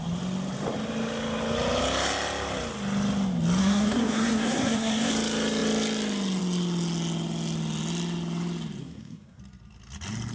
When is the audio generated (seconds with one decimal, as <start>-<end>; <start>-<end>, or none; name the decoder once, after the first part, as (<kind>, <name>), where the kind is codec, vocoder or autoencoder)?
3.6-5.1 (codec, SNAC); 8.8-9.4